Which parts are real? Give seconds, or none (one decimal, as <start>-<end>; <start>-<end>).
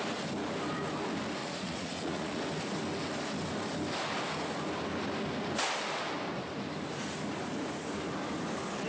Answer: 0.0-1.4; 2.4-8.9